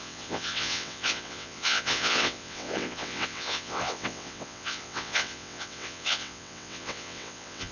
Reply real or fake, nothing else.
fake